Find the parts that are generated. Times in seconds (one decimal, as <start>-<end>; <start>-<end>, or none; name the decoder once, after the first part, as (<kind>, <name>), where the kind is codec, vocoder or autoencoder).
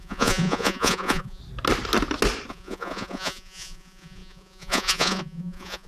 0.0-1.4 (vocoder, Vocos); 2.5-5.9